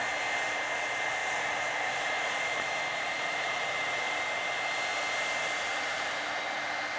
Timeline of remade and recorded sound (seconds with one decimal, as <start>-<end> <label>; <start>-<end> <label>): 0.0-1.2 recorded; 1.2-4.2 remade; 4.2-7.0 recorded